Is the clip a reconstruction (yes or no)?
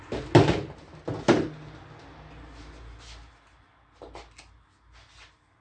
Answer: no